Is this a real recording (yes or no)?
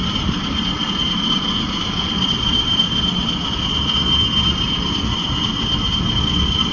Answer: yes